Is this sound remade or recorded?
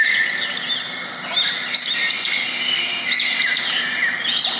recorded